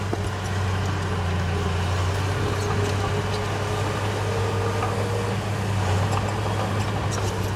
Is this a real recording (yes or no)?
yes